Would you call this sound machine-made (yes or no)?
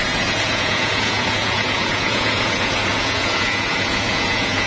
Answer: yes